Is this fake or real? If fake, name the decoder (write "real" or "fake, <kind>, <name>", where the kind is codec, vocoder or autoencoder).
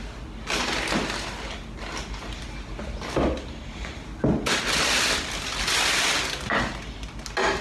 real